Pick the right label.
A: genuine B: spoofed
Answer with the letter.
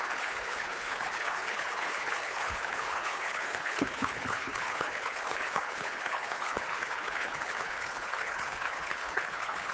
B